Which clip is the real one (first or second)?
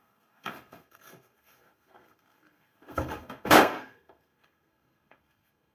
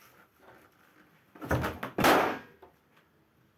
second